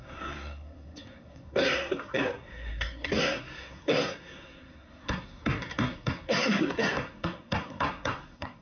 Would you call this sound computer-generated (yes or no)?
yes